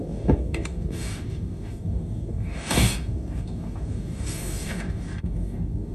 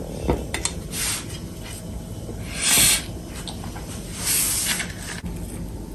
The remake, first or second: first